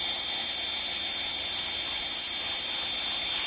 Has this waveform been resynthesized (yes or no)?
no